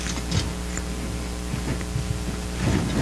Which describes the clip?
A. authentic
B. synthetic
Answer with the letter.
A